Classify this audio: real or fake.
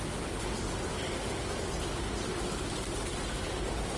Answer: real